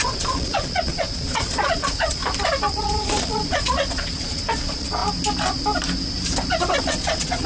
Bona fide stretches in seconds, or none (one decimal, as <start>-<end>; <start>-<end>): 2.2-2.7; 5.0-6.8